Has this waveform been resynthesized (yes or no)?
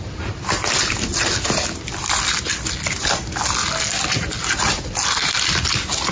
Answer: no